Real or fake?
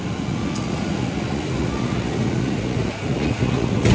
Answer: fake